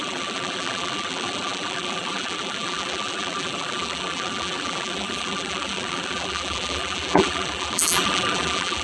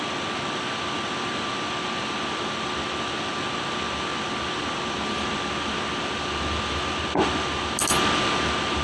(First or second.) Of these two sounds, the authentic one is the second